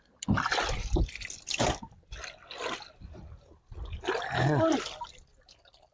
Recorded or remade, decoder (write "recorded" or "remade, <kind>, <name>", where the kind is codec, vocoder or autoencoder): recorded